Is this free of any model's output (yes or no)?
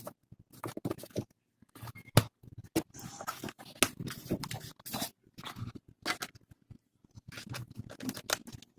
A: yes